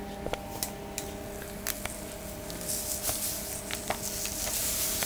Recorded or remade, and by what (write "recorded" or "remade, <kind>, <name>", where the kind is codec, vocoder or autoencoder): recorded